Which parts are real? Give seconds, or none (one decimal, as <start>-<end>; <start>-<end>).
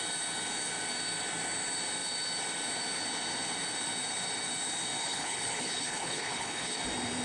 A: 0.0-5.0; 6.8-7.2